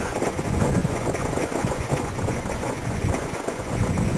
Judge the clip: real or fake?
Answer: fake